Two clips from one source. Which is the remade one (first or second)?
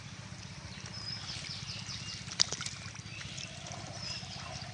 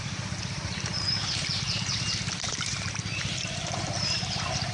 second